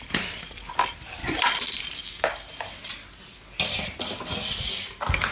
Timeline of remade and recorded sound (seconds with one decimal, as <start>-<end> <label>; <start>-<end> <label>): 0.0-1.2 remade; 1.2-3.6 recorded; 3.6-5.3 remade